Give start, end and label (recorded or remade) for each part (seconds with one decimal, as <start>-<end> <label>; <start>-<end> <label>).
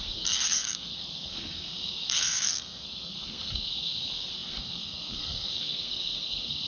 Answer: 0.0-6.7 remade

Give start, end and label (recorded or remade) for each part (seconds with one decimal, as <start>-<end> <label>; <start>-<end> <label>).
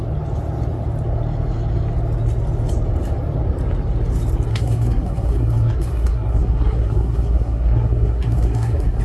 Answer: 0.0-4.5 recorded; 4.5-9.0 remade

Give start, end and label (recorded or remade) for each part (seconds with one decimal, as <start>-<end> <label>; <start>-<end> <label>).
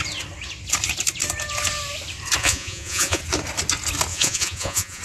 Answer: 0.0-2.4 recorded; 2.4-3.2 remade; 3.2-4.1 recorded; 4.1-5.0 remade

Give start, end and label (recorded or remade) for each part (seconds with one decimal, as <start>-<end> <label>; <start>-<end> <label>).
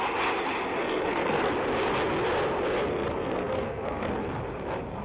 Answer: 0.0-0.8 recorded; 0.8-1.5 remade; 1.5-2.9 recorded; 2.9-4.1 remade; 4.1-5.0 recorded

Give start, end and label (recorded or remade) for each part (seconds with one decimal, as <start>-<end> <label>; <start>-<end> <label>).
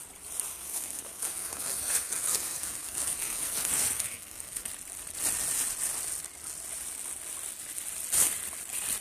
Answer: 0.0-0.5 recorded; 0.5-4.7 remade; 4.7-9.0 recorded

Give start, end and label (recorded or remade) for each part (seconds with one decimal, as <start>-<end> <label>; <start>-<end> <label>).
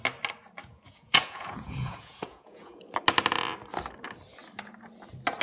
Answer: 0.0-0.6 recorded; 0.6-2.8 remade; 2.8-5.4 recorded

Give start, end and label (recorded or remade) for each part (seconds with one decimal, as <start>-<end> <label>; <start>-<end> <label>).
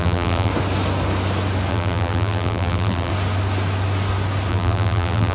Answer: 0.0-0.5 remade; 0.5-1.7 recorded; 1.7-3.1 remade; 3.1-4.5 recorded; 4.5-5.3 remade